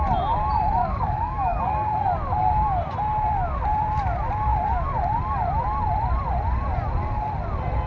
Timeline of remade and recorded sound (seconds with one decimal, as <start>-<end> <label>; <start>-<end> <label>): 0.0-0.8 recorded; 0.8-1.6 remade; 1.6-7.9 recorded